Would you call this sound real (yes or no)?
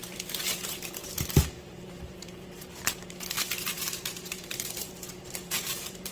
no